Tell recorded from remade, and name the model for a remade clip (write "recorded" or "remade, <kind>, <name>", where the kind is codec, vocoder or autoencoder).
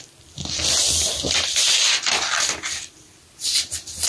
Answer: recorded